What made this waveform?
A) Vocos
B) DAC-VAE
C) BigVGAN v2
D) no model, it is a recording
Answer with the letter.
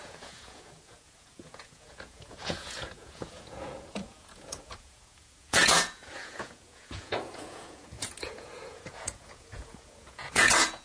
A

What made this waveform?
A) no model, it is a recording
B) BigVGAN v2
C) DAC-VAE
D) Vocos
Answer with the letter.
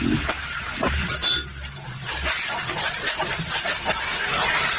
A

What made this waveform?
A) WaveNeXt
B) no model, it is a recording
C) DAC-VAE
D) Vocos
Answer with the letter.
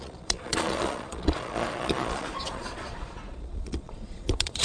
D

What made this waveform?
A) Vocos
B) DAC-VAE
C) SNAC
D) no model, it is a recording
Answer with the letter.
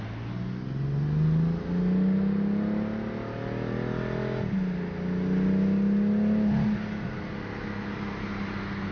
D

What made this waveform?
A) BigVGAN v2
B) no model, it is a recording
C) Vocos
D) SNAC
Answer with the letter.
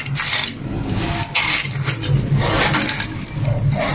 B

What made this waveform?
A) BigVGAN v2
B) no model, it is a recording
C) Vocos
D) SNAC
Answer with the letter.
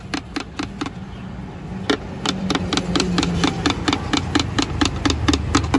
B